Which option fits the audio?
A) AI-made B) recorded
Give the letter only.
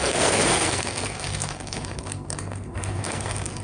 A